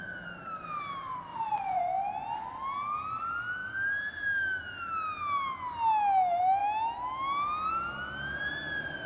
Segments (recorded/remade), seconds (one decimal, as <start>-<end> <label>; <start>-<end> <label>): 0.0-1.3 recorded; 1.3-1.8 remade; 1.8-9.1 recorded